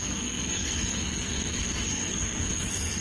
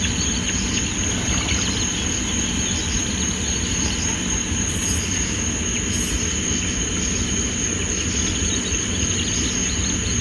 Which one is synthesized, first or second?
first